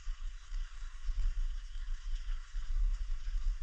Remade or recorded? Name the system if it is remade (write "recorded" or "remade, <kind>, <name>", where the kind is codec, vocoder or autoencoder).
remade, codec, SNAC